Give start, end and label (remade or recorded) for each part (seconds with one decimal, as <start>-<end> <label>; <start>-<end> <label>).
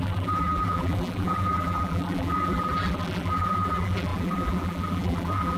0.0-5.6 remade